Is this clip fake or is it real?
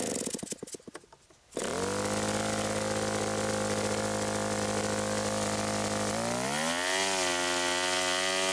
real